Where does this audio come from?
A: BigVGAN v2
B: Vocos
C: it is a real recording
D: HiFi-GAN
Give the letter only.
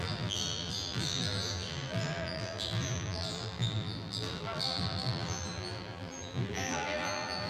A